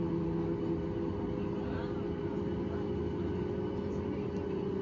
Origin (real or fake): real